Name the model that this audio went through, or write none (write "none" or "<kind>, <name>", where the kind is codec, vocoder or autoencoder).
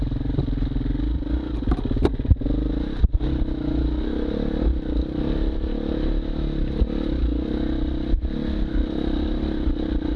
none